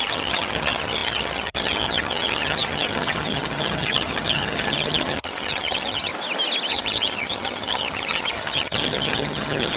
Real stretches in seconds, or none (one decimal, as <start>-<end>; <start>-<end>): 6.1-6.7